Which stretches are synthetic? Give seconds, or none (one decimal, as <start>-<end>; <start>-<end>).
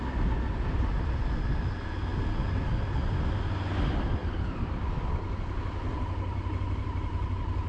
none